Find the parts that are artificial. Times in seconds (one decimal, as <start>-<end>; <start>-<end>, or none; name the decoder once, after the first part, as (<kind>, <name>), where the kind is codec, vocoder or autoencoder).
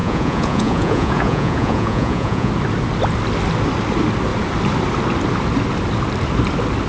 0.0-2.5 (vocoder, Vocos)